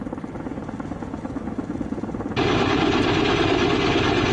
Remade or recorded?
recorded